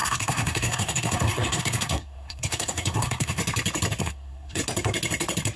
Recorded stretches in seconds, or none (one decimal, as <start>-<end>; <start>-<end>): 3.4-4.0; 4.6-5.6

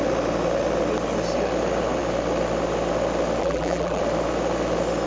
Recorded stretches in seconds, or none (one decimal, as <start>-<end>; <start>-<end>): 0.0-3.4; 4.0-5.1

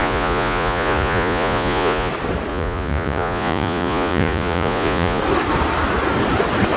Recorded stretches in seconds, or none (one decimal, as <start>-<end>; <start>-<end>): 2.1-2.5; 5.2-6.8

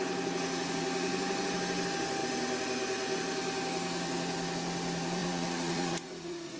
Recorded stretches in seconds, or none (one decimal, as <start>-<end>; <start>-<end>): 0.0-5.2

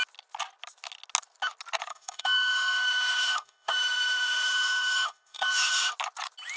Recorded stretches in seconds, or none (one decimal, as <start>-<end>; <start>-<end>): 0.0-1.9; 5.9-6.6